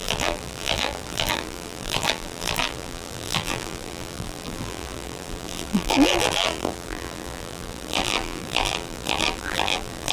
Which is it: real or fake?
fake